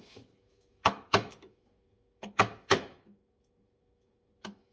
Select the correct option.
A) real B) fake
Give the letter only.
B